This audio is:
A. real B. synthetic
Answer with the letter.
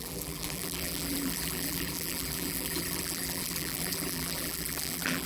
B